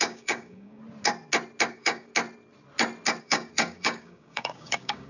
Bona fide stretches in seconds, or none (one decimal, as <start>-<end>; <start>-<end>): 0.8-1.7; 2.1-3.2